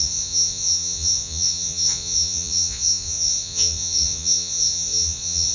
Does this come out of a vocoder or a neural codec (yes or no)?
yes